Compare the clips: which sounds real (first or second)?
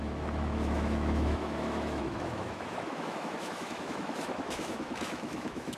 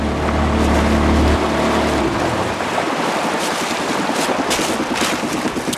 second